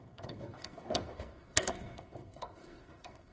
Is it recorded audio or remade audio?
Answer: remade